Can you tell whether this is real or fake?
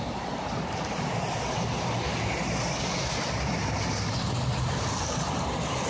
real